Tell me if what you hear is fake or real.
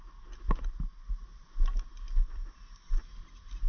real